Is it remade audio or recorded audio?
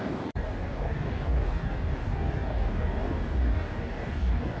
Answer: remade